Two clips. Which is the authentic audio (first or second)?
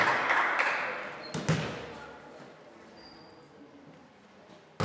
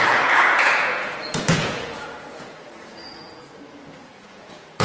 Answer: first